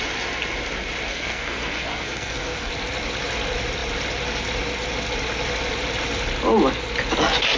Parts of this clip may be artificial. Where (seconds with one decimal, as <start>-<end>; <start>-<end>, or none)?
1.1-2.7